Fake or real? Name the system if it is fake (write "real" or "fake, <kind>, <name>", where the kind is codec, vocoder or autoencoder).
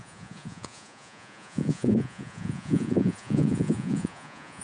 fake, vocoder, Vocos